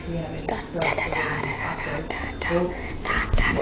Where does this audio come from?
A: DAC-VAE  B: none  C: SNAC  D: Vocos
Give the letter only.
B